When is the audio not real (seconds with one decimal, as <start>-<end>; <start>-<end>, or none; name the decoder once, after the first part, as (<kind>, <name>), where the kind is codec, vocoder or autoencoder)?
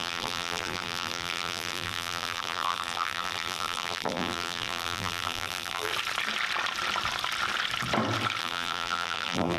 0.0-5.9 (vocoder, BigVGAN v2); 8.4-9.6